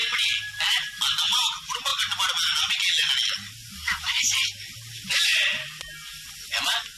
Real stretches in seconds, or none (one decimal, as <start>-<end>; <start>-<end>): 0.0-7.0